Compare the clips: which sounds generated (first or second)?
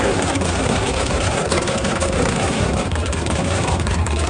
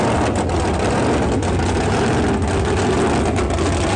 first